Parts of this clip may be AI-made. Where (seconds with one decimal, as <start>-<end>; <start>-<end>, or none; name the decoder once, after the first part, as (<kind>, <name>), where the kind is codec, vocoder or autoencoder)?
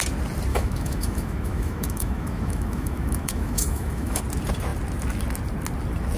0.5-4.2 (autoencoder, DAC-VAE)